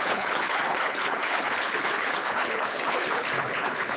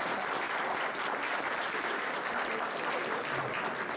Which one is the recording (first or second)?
second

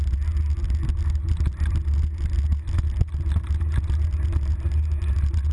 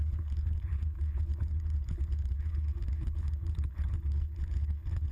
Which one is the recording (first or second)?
first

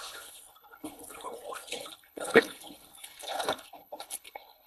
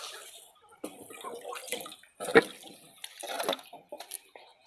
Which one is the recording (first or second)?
second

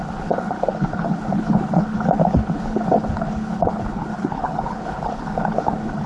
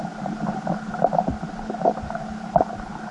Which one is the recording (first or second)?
second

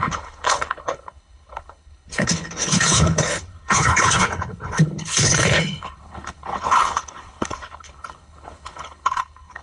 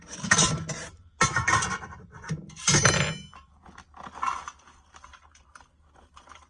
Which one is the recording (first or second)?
second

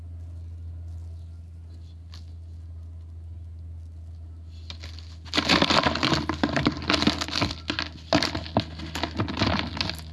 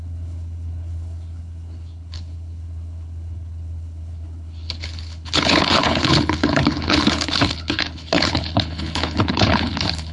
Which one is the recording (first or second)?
first